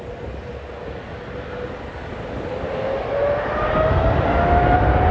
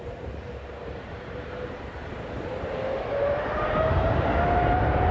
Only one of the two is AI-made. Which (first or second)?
second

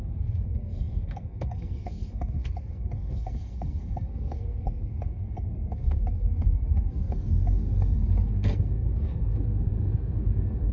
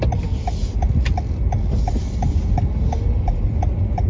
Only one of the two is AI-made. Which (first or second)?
first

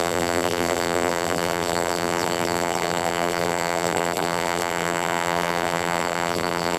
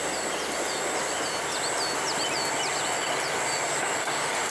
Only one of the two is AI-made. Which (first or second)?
first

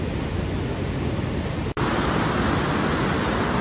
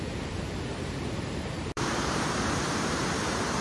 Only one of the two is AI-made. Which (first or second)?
second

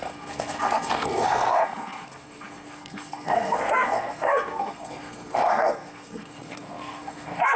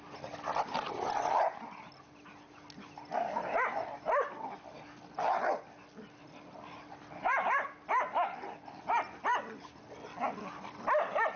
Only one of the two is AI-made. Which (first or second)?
first